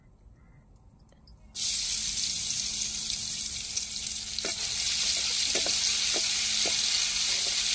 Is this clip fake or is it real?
real